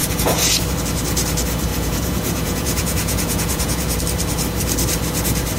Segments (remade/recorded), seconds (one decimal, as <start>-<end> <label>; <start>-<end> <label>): 0.0-0.6 remade; 0.6-1.7 recorded; 1.7-4.0 remade; 4.0-5.6 recorded